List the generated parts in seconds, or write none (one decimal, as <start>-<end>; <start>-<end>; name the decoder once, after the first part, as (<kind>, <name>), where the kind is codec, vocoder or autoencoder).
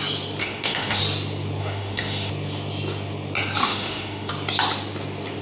0.4-1.0 (autoencoder, DAC-VAE); 1.6-2.3; 3.6-4.3